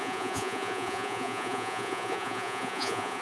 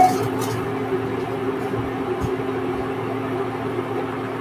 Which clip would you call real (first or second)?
second